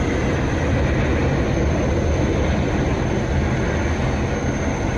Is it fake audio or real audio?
real